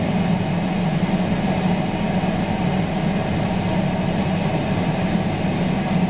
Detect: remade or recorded recorded